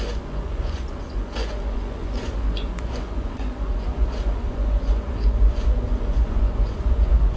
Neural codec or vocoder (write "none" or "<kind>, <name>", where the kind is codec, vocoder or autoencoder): vocoder, Vocos